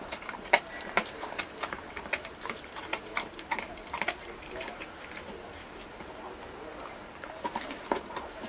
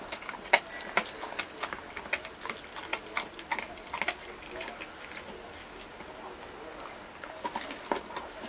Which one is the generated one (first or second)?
first